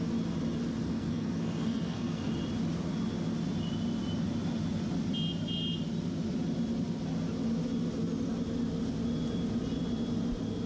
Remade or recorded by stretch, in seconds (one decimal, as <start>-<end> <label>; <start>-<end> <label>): 0.0-0.8 recorded; 0.8-2.3 remade; 2.3-10.7 recorded